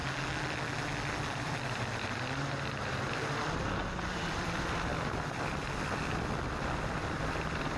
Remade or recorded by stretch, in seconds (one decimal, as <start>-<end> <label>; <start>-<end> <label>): 0.0-1.3 recorded; 1.3-7.8 remade